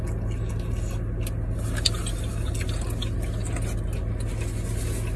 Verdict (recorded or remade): recorded